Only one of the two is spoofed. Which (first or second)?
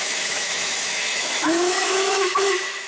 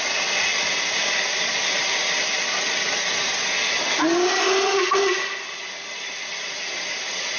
first